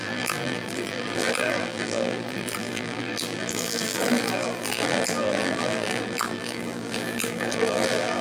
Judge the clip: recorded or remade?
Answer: remade